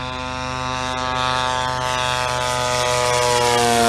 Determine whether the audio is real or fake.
real